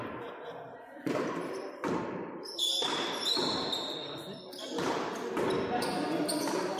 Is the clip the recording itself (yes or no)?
yes